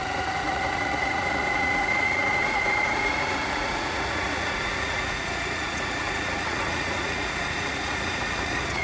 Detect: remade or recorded remade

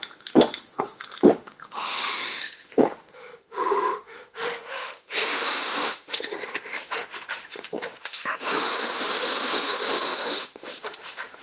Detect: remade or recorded remade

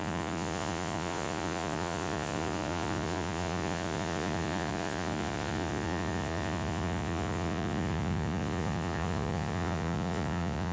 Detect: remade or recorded remade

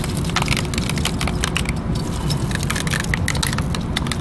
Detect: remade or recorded recorded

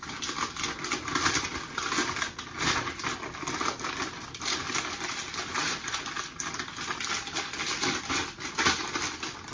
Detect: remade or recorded recorded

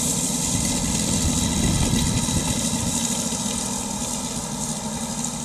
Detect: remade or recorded recorded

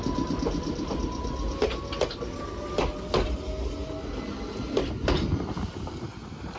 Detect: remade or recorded recorded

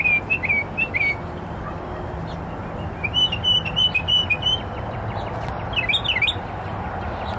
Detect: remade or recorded recorded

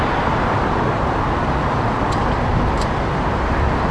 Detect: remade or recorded recorded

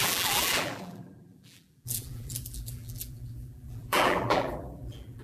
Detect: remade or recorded remade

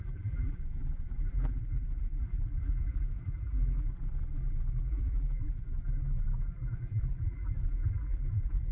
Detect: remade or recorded remade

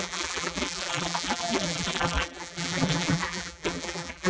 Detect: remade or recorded remade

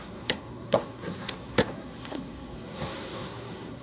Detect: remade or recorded remade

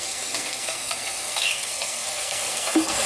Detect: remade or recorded remade